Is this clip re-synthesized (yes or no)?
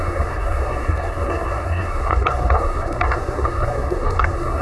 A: yes